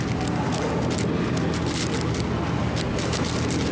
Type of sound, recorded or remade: recorded